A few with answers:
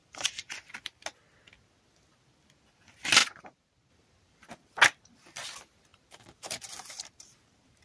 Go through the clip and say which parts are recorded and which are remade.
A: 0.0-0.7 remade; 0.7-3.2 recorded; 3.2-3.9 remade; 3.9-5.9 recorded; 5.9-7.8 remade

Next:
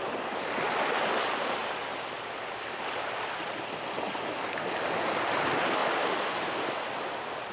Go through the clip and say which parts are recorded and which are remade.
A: 0.0-1.6 recorded; 1.6-5.2 remade; 5.2-7.5 recorded

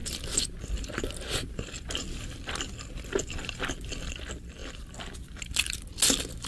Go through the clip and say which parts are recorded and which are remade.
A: 0.0-3.9 remade; 3.9-4.6 recorded; 4.6-5.9 remade; 5.9-6.5 recorded

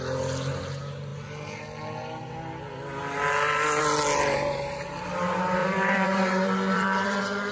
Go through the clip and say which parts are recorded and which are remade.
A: 0.0-5.6 recorded; 5.6-7.5 remade

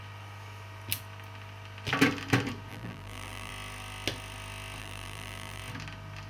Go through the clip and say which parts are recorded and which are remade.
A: 0.0-2.7 recorded; 2.7-3.5 remade; 3.5-4.8 recorded; 4.8-5.6 remade; 5.6-6.3 recorded

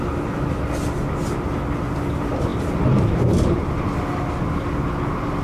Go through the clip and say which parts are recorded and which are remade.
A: 0.0-5.4 recorded

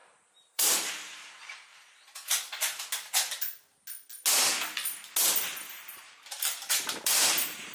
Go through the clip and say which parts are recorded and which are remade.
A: 0.0-1.7 remade; 1.7-5.7 recorded; 5.7-7.7 remade

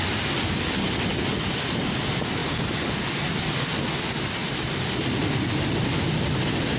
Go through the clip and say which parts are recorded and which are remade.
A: 0.0-6.8 recorded